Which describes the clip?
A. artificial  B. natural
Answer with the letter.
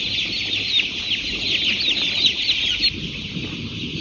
B